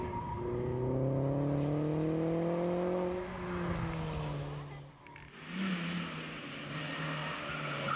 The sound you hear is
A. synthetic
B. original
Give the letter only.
B